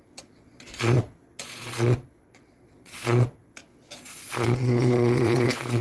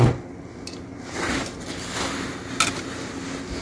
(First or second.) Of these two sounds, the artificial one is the first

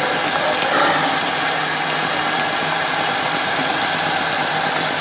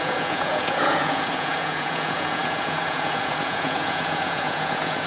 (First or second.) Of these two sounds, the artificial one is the second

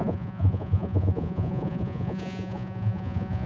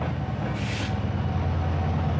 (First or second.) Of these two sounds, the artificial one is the first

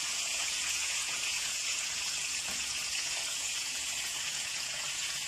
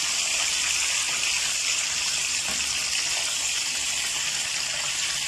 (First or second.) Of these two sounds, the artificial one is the first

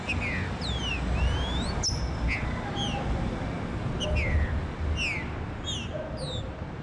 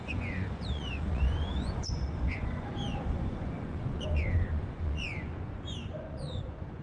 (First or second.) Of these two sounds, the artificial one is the second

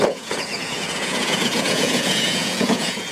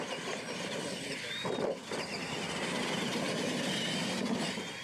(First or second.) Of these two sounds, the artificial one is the first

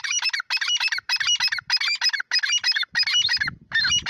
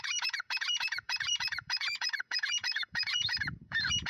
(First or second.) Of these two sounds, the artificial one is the second